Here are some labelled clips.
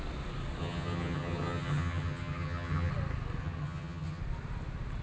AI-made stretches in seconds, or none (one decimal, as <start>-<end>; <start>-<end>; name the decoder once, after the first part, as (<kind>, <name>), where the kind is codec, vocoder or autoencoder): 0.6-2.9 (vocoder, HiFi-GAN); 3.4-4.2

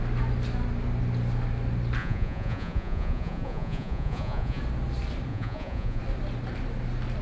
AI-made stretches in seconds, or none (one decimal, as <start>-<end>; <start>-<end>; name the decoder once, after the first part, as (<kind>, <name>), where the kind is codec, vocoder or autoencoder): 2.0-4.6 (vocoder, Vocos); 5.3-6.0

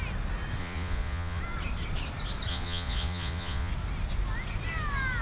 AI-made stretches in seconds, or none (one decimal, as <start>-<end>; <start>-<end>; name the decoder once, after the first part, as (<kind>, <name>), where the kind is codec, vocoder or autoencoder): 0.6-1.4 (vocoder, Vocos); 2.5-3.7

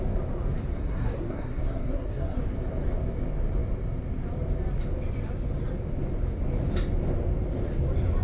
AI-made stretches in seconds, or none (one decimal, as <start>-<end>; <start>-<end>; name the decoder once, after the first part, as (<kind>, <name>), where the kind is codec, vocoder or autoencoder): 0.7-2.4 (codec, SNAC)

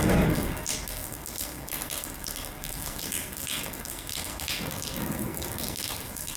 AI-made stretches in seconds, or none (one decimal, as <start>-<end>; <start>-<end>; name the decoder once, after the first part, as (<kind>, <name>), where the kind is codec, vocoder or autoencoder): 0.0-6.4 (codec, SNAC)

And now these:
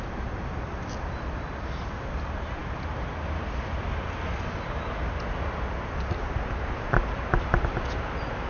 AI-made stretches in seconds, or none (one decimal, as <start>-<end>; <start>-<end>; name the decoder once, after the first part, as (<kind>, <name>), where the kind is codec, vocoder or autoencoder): none

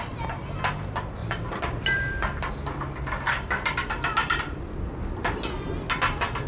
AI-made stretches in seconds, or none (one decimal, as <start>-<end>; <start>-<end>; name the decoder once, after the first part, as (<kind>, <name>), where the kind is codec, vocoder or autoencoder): 1.2-2.5 (vocoder, BigVGAN v2); 4.2-4.8